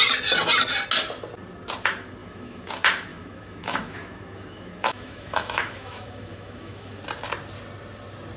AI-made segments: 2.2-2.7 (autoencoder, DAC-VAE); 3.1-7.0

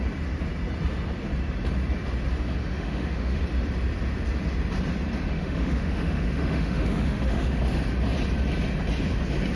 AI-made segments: 2.6-3.4 (autoencoder, DAC-VAE); 5.3-7.6

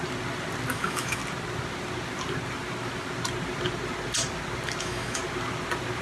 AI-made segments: 0.7-1.2 (autoencoder, DAC-VAE); 4.8-5.2

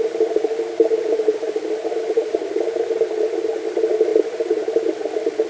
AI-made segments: none

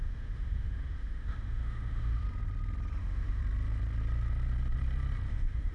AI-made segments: 0.0-2.2 (autoencoder, DAC-VAE); 3.0-3.4; 5.3-5.7

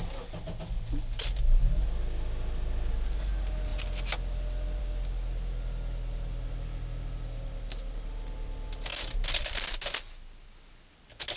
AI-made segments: none

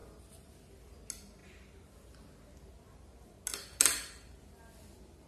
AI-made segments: none